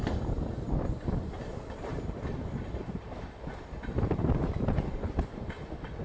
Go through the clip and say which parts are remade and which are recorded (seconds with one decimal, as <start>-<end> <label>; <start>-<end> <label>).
0.0-1.9 recorded; 1.9-5.5 remade; 5.5-6.0 recorded

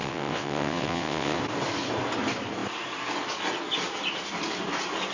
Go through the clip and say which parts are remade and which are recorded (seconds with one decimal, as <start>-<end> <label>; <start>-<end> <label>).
0.0-1.4 remade; 1.4-5.1 recorded

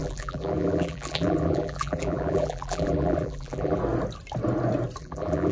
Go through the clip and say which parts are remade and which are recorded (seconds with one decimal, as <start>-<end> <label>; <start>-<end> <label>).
0.0-3.8 remade; 3.8-5.0 recorded; 5.0-5.5 remade

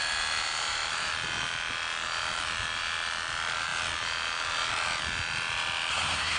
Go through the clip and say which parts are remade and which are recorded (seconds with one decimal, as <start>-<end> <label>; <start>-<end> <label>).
0.0-5.9 recorded; 5.9-6.4 remade

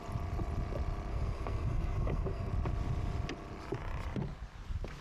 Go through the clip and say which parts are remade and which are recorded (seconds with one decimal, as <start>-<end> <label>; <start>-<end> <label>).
0.0-1.1 recorded; 1.1-2.5 remade; 2.5-5.0 recorded

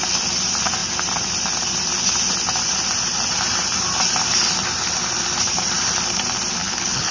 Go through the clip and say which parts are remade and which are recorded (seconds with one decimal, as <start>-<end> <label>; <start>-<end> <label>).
0.0-6.6 recorded; 6.6-7.1 remade